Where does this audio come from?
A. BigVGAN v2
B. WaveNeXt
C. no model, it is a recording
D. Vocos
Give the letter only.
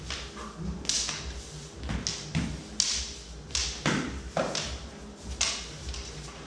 C